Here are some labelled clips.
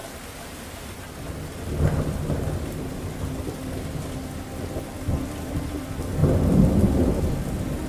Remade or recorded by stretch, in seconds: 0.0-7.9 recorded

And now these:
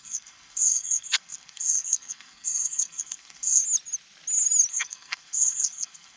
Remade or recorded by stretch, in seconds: 0.0-3.6 remade; 3.6-4.7 recorded; 4.7-6.2 remade

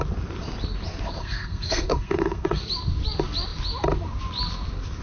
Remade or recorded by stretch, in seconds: 0.0-1.2 recorded; 1.2-2.6 remade; 2.6-5.0 recorded